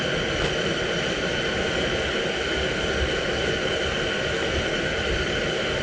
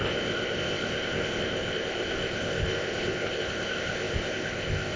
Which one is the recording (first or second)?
first